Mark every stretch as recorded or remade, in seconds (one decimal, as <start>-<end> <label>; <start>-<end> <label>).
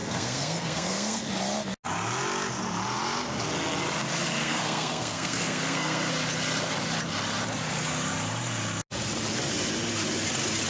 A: 0.0-1.3 remade; 1.3-4.4 recorded; 4.4-6.1 remade; 6.1-10.7 recorded